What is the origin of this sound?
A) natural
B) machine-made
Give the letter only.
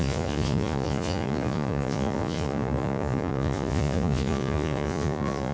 B